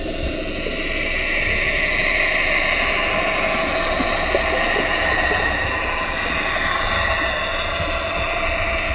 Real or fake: real